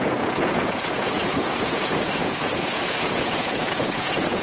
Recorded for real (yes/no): no